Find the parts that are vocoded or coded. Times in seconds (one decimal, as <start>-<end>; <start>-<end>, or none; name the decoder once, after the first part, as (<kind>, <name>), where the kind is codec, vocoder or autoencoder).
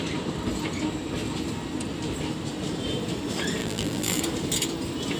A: 3.6-4.2 (vocoder, BigVGAN v2)